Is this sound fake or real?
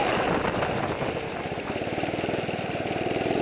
real